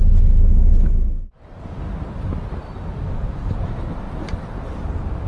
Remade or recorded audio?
recorded